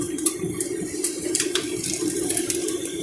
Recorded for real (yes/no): no